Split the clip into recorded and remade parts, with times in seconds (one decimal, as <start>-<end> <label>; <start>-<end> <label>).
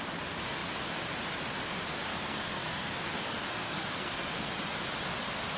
0.0-2.1 recorded; 2.1-4.5 remade; 4.5-5.6 recorded